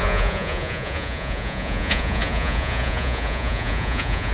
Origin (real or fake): fake